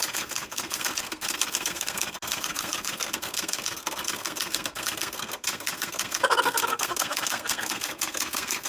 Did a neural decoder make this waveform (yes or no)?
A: yes